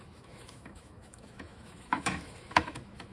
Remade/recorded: remade